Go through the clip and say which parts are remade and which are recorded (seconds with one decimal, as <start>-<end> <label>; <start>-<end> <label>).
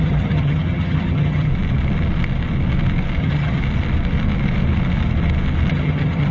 0.0-1.5 remade; 1.5-3.2 recorded; 3.2-3.6 remade; 3.6-5.7 recorded; 5.7-6.3 remade